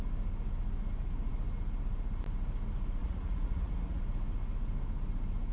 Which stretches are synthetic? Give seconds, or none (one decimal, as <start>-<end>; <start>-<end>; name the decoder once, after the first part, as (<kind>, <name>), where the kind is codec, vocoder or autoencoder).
3.0-4.0 (vocoder, Vocos)